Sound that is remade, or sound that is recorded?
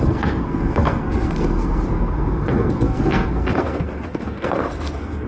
remade